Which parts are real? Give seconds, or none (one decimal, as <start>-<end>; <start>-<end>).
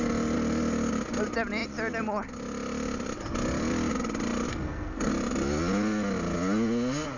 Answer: 0.0-4.5; 5.1-7.2